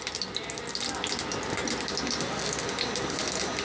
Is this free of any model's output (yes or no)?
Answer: yes